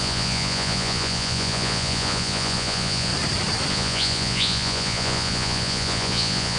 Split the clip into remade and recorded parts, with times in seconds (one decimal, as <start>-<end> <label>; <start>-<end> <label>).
0.0-3.1 remade; 3.1-3.7 recorded; 3.7-6.6 remade